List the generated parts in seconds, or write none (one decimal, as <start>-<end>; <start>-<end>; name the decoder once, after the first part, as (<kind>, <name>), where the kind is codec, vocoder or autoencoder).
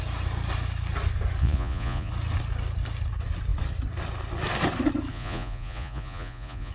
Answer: 1.4-2.1 (vocoder, Vocos); 5.1-6.7